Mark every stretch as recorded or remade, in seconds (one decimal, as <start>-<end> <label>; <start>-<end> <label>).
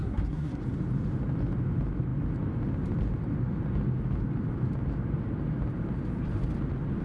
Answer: 0.0-0.6 remade; 0.6-7.0 recorded